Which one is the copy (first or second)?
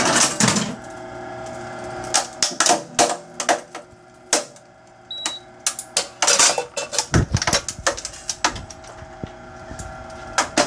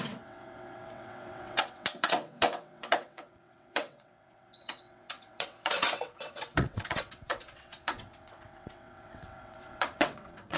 second